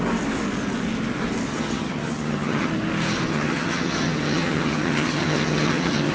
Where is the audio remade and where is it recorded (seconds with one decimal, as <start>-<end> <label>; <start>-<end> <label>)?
0.0-1.5 recorded; 1.5-2.7 remade; 2.7-3.3 recorded; 3.3-6.1 remade